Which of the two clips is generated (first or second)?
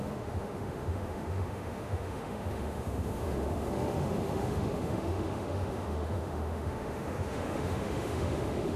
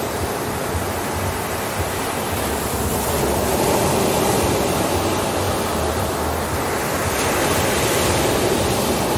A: first